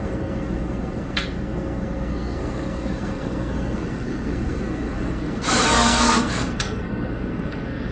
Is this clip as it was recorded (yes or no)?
no